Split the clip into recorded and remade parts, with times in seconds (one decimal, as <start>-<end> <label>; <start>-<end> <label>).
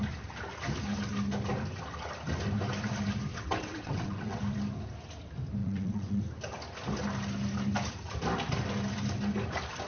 0.0-3.3 recorded; 3.3-4.4 remade; 4.4-5.6 recorded; 5.6-6.2 remade; 6.2-9.9 recorded